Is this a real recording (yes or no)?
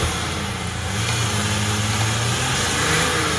yes